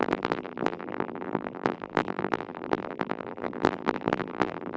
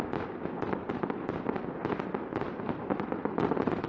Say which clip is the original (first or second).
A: second